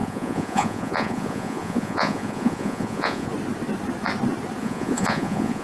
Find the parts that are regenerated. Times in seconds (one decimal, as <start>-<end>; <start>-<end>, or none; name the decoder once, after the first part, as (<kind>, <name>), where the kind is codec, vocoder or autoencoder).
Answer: 0.0-3.3 (vocoder, Vocos); 4.6-5.6

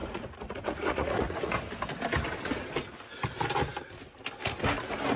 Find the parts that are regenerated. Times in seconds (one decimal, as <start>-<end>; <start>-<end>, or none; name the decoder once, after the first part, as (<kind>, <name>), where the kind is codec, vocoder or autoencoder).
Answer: 0.0-1.5 (vocoder, Vocos)